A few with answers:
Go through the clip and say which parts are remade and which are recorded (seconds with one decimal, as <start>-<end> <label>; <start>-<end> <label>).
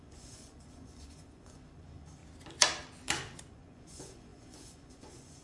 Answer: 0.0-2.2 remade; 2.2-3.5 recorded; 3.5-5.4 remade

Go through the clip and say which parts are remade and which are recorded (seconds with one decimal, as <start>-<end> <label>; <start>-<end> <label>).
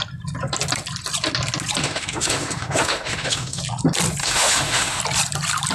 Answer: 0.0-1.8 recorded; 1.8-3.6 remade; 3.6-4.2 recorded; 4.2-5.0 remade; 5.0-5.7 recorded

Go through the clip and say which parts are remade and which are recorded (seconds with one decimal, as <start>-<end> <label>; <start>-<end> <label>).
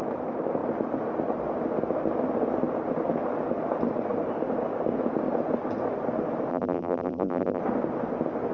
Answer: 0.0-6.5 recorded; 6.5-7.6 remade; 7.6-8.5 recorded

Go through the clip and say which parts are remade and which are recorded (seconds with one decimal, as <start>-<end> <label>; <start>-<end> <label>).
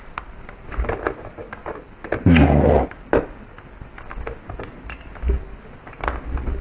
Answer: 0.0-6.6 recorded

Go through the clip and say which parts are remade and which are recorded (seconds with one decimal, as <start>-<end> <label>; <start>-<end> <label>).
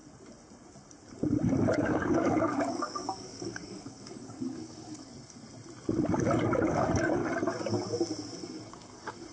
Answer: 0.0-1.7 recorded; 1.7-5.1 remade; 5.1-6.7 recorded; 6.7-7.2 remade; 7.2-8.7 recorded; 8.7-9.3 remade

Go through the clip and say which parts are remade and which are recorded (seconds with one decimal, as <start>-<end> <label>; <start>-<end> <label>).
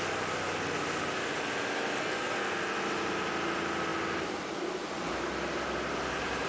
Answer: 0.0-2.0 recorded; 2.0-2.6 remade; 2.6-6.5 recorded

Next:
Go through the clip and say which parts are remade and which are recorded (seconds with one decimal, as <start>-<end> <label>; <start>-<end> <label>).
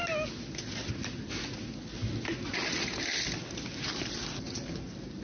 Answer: 0.0-5.2 recorded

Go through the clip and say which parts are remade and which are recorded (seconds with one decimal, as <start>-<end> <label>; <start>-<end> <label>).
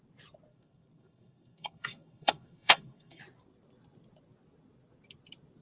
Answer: 0.0-0.5 recorded; 0.5-3.2 remade; 3.2-5.6 recorded